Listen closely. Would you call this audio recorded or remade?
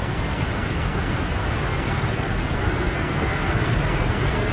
remade